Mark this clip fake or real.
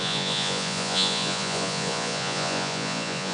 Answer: fake